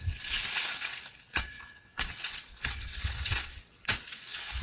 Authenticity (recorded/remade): remade